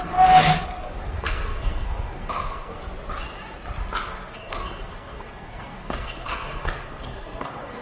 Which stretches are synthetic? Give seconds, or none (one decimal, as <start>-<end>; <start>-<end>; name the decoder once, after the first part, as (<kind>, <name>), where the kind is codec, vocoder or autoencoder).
0.0-0.5 (codec, SNAC); 1.0-2.8; 4.1-7.8

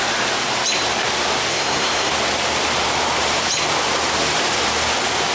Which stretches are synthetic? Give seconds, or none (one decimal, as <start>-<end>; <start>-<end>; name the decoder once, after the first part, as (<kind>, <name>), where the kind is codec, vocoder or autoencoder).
1.5-2.1 (codec, SNAC)